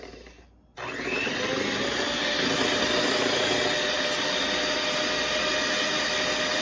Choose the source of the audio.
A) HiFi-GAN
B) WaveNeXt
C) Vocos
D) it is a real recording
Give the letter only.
D